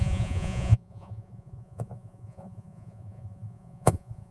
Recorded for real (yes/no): no